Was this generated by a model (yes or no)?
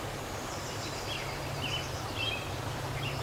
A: yes